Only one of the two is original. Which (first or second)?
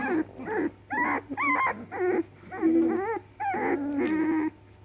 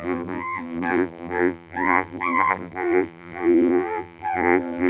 first